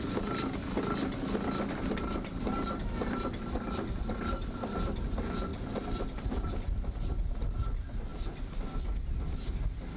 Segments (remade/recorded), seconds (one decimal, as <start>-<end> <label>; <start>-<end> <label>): 0.0-5.5 recorded; 5.5-6.5 remade; 6.5-10.0 recorded